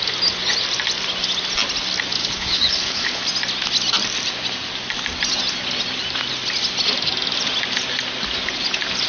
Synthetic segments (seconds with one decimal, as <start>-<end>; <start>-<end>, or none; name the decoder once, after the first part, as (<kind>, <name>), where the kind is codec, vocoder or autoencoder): 2.2-3.2 (codec, HILCodec)